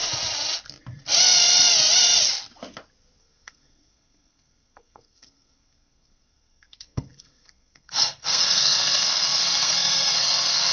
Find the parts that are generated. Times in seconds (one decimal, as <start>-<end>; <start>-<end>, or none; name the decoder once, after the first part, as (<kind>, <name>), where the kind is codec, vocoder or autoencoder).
3.2-10.7 (codec, SNAC)